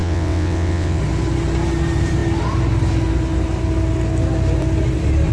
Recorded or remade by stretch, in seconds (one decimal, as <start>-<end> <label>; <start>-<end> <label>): 0.0-1.0 remade; 1.0-5.3 recorded